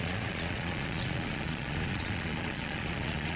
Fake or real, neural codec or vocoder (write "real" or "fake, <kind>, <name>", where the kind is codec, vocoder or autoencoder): fake, vocoder, Vocos